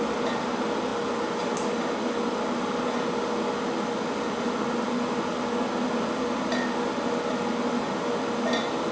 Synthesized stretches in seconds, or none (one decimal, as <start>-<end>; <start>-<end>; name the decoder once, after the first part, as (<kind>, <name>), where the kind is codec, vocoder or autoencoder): none